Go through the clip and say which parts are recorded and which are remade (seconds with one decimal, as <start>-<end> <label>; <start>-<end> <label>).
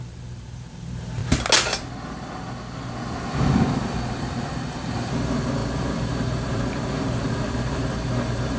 0.0-1.2 remade; 1.2-4.2 recorded; 4.2-8.6 remade